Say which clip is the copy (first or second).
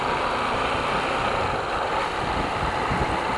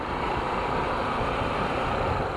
second